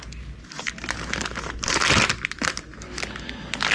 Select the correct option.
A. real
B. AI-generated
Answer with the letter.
A